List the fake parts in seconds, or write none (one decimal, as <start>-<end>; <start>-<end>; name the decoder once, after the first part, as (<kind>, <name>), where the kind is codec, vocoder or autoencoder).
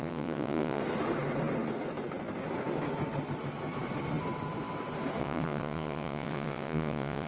0.0-0.8 (vocoder, WaveNeXt); 5.2-7.3